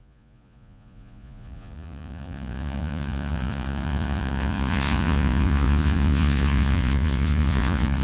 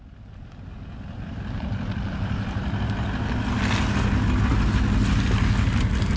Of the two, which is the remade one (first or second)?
first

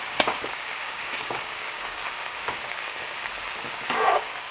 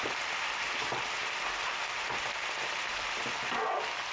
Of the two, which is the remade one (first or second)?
first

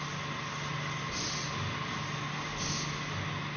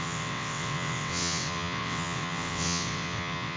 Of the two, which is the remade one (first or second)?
second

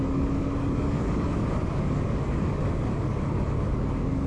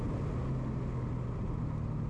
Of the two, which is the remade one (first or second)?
first